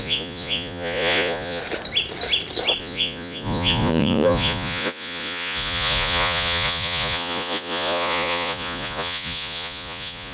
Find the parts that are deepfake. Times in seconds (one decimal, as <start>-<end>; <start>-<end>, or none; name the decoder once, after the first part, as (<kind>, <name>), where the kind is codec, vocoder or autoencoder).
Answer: 0.0-1.6 (vocoder, Vocos); 2.8-10.3